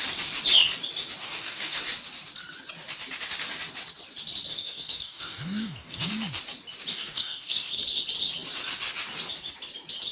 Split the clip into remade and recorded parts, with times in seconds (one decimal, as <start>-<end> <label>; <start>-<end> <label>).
0.0-1.2 recorded; 1.2-1.8 remade; 1.8-4.5 recorded; 4.5-6.1 remade; 6.1-6.9 recorded; 6.9-7.7 remade; 7.7-10.1 recorded